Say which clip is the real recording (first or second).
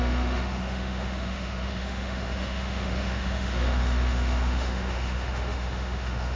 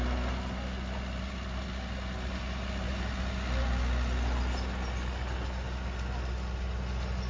second